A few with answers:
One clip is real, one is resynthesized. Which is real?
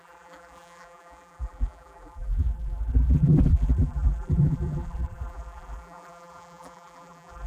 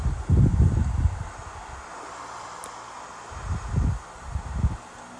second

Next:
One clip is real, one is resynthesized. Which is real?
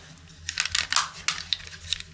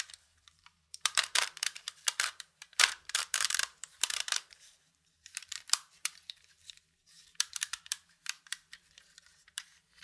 first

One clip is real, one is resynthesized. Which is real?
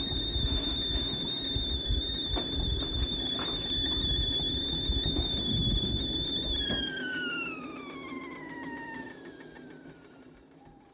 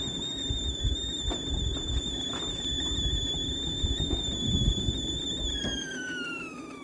first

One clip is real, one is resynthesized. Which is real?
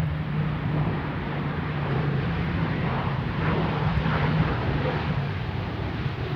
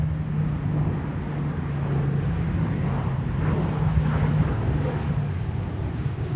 second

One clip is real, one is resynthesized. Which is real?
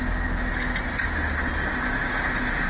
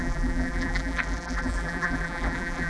first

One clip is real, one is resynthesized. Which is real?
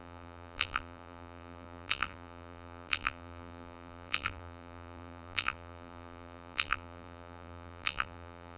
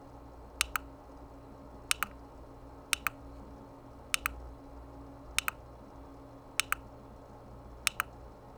second